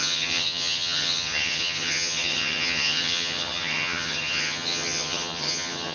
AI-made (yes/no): yes